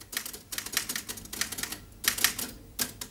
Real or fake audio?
real